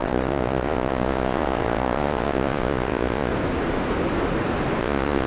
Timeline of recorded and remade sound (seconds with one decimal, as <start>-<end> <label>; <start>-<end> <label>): 0.0-3.3 remade; 3.3-4.8 recorded; 4.8-5.3 remade

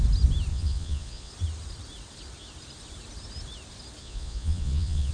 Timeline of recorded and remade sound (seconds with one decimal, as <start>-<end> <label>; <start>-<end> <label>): 0.0-0.5 recorded; 0.5-1.3 remade; 1.3-4.0 recorded; 4.0-5.1 remade

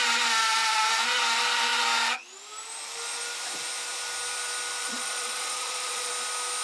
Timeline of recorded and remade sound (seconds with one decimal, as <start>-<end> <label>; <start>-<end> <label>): 0.0-4.8 recorded; 4.8-6.1 remade; 6.1-6.6 recorded

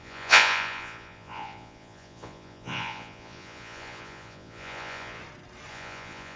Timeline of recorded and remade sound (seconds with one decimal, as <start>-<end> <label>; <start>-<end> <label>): 0.0-5.2 remade; 5.2-5.7 recorded; 5.7-6.4 remade

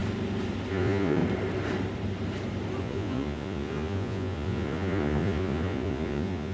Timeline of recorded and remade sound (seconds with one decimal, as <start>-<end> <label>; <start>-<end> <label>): 0.0-0.7 recorded; 0.7-1.2 remade; 1.2-2.8 recorded; 2.8-6.5 remade

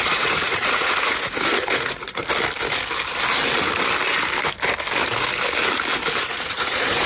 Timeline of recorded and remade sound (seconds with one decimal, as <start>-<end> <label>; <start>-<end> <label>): 0.0-2.2 remade; 2.2-6.2 recorded; 6.2-7.1 remade

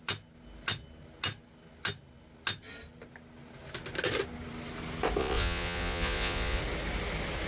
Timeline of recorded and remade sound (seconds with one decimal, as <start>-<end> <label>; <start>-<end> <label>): 0.0-5.2 recorded; 5.2-6.6 remade; 6.6-7.5 recorded